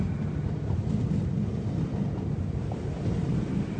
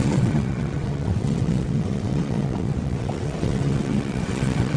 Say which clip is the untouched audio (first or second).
first